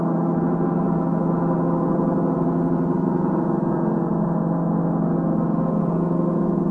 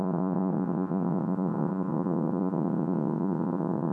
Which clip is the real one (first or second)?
first